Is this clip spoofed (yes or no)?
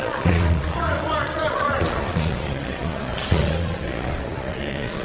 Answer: yes